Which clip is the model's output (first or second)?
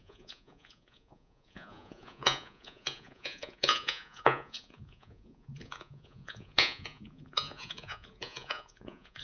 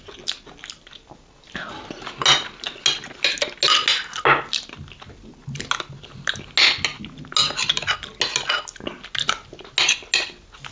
first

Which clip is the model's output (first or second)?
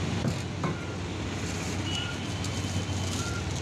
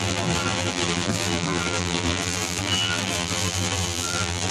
second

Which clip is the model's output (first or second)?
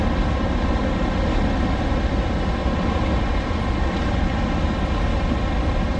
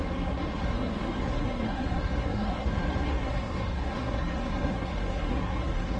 second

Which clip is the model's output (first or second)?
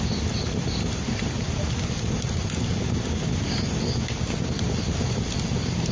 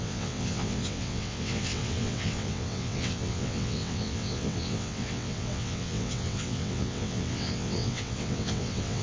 second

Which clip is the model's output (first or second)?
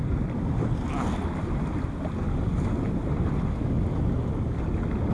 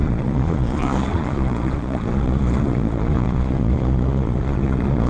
second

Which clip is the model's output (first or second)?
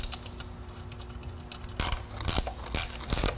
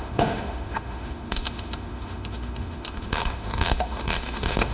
second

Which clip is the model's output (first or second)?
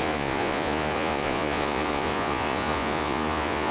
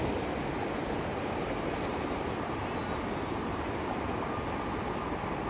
first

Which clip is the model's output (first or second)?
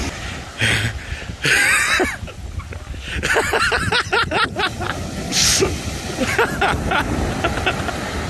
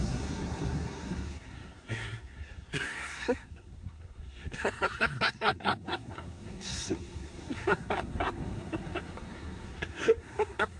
second